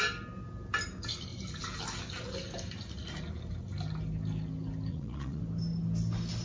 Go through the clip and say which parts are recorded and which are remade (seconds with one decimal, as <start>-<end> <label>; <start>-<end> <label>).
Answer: 0.0-4.9 recorded; 4.9-5.4 remade; 5.4-6.4 recorded